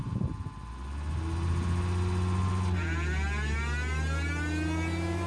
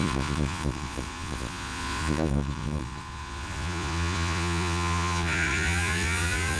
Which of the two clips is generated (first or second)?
second